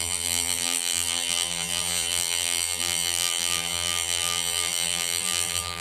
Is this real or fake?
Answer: fake